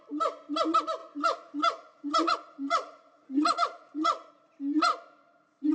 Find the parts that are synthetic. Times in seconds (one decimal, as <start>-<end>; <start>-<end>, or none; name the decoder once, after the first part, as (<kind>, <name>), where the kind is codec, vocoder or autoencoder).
1.0-4.3 (vocoder, Vocos)